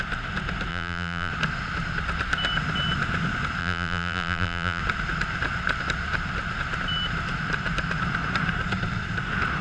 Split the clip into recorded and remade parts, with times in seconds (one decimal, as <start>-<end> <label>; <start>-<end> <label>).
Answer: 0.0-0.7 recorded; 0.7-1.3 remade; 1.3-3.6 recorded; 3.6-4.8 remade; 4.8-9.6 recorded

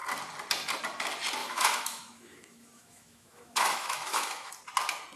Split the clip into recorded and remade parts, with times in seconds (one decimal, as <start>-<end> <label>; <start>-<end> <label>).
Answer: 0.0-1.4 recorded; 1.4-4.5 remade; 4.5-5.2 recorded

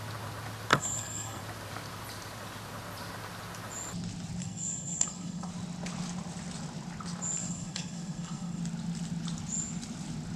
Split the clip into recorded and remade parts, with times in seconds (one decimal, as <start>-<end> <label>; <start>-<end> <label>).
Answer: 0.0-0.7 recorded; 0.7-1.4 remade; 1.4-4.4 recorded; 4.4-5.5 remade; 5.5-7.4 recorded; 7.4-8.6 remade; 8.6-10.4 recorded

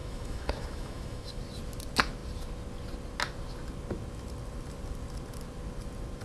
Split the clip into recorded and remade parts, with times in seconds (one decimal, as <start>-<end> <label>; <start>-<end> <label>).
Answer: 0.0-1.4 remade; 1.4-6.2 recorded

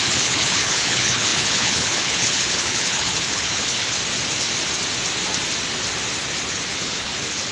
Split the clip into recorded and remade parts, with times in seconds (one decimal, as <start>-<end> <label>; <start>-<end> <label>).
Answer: 0.0-4.0 remade; 4.0-6.7 recorded; 6.7-7.5 remade

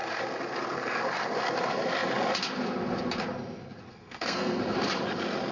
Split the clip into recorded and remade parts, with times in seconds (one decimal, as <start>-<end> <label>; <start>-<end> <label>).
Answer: 0.0-3.9 recorded; 3.9-4.6 remade; 4.6-5.5 recorded